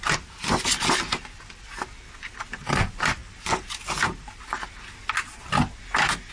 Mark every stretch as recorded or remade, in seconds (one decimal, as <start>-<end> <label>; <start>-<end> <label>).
0.0-6.3 recorded